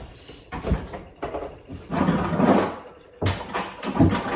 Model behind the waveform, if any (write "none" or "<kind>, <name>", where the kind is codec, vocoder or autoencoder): none